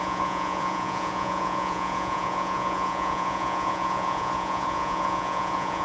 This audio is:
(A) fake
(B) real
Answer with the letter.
A